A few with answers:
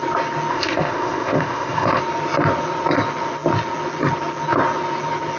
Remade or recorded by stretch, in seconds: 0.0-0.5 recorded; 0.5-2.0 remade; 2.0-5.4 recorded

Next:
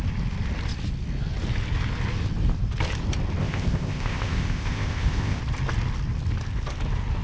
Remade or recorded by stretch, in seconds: 0.0-3.4 recorded; 3.4-5.4 remade; 5.4-7.2 recorded

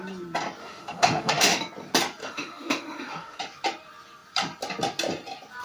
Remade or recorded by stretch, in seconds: 0.0-0.6 recorded; 0.6-1.6 remade; 1.6-2.2 recorded; 2.2-3.4 remade; 3.4-5.6 recorded

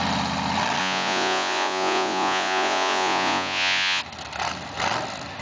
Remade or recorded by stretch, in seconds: 0.0-0.8 recorded; 0.8-4.0 remade; 4.0-5.4 recorded

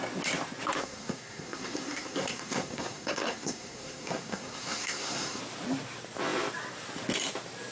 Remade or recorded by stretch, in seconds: 0.0-0.8 recorded; 0.8-5.4 remade; 5.4-7.7 recorded

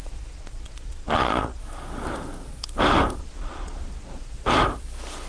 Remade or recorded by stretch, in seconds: 0.0-1.6 remade; 1.6-3.2 recorded; 3.2-4.5 remade; 4.5-5.3 recorded

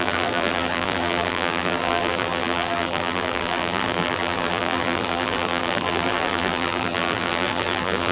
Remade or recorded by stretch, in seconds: 0.0-8.1 remade

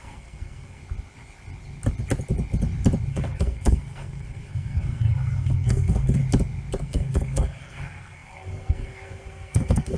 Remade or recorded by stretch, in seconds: 0.0-0.8 remade; 0.8-3.1 recorded; 3.1-6.2 remade; 6.2-6.8 recorded; 6.8-10.0 remade